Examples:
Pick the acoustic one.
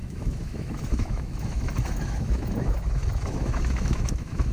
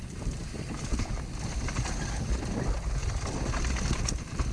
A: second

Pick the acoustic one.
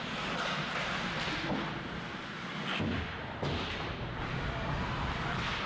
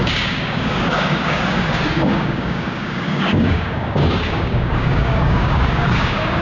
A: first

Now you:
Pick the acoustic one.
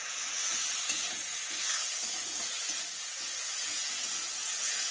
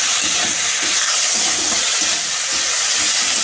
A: second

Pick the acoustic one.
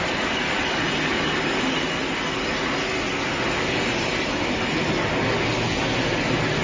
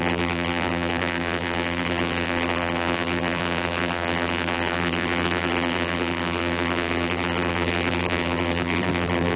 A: first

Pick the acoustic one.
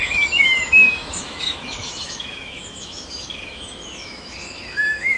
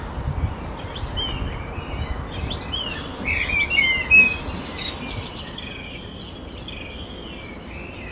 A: second